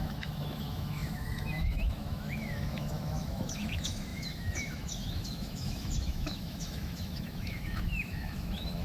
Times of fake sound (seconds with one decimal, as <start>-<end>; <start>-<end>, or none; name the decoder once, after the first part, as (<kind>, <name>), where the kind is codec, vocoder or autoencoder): 0.0-8.8 (autoencoder, DAC-VAE)